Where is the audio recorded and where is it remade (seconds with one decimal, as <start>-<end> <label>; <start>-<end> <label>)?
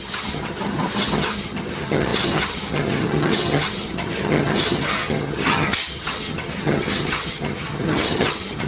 0.0-8.7 remade